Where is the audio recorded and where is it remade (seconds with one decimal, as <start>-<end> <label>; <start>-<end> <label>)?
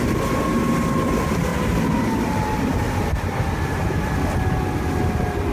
0.0-1.5 recorded; 1.5-4.0 remade; 4.0-5.5 recorded